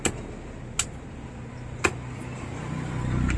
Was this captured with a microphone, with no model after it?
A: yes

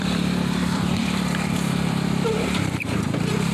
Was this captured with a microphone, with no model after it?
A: no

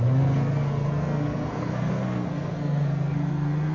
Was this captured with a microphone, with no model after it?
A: no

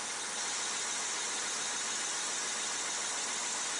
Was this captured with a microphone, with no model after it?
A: yes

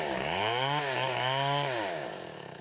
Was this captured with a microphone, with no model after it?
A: no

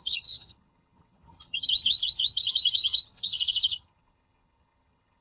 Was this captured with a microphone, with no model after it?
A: no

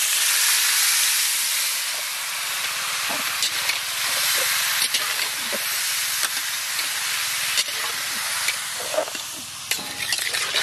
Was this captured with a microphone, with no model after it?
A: yes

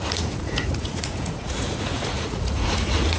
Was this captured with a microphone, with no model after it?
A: no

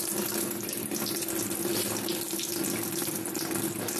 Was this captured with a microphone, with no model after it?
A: yes